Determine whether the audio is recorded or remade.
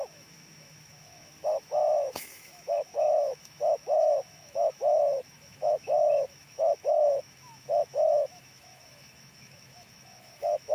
remade